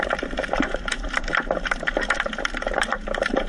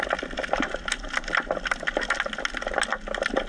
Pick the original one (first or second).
second